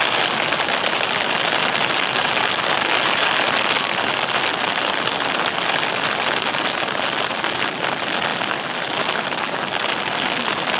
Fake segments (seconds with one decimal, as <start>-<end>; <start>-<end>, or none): none